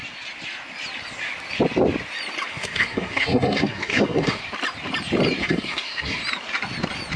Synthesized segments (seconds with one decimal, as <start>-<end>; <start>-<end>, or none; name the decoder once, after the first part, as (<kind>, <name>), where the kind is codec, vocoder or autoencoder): 2.5-4.4 (codec, SNAC); 5.4-6.2